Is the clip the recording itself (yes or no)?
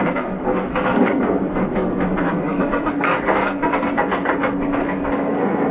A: no